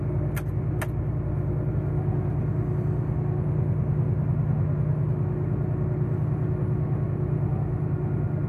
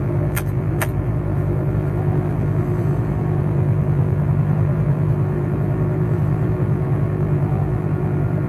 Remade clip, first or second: second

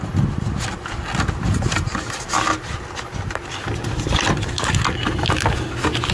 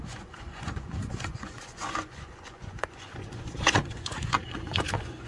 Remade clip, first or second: second